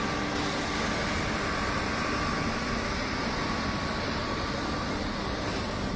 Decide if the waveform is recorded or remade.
recorded